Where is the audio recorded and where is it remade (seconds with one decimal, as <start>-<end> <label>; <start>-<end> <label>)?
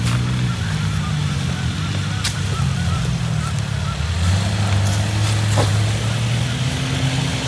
0.0-7.5 recorded